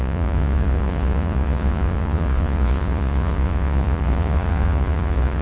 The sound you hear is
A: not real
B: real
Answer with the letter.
A